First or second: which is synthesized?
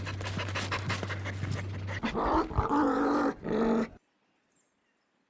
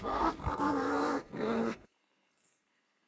second